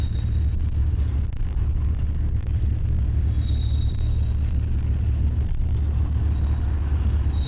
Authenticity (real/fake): real